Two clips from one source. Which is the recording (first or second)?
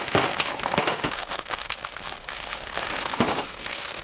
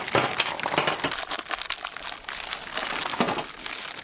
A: second